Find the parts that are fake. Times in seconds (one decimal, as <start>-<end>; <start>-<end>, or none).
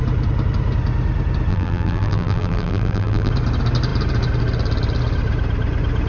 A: 1.5-3.3